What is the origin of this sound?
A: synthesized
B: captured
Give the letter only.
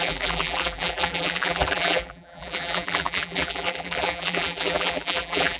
A